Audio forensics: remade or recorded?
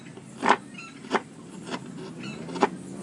recorded